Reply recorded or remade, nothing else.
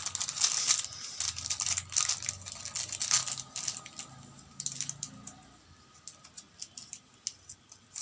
recorded